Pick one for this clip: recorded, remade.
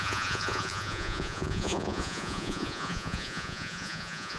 remade